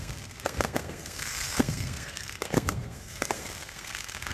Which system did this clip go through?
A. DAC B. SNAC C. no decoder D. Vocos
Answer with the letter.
B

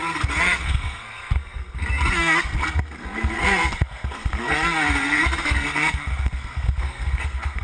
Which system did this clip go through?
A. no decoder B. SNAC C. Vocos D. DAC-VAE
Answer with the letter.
B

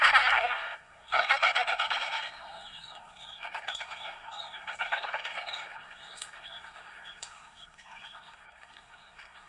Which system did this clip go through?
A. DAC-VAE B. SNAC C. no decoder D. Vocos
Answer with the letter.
B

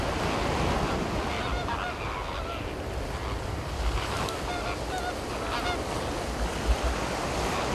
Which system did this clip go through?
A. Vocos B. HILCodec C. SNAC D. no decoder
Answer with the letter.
D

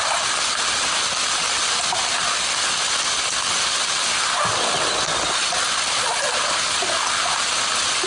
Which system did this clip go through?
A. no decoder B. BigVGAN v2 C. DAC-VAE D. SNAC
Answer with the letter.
A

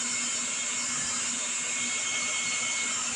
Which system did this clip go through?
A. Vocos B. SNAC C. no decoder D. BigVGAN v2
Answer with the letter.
C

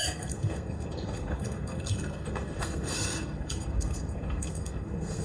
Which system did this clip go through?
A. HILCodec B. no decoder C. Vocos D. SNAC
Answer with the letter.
D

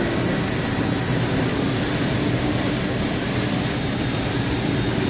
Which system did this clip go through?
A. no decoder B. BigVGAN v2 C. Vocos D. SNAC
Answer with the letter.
A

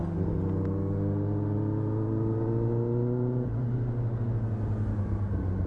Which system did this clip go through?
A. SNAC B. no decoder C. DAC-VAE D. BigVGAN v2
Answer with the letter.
B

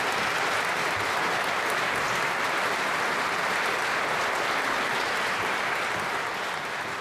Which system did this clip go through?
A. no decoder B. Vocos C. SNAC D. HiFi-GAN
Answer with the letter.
A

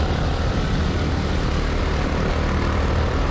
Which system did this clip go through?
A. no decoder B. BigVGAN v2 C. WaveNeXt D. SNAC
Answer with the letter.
A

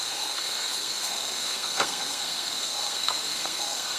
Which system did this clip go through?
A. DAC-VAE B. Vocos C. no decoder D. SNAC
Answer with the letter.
D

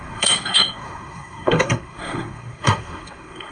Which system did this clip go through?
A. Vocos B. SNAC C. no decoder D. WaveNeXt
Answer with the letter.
B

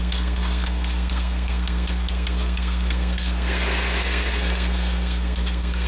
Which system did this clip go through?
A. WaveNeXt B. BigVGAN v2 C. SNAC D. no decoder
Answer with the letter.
C